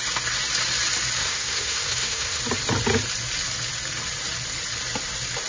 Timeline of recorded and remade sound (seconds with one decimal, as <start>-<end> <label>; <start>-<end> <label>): 0.0-1.2 recorded; 1.2-2.4 remade; 2.4-5.5 recorded